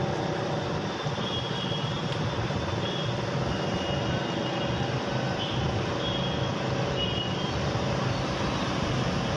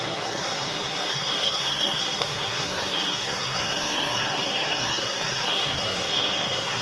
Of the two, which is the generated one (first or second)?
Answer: second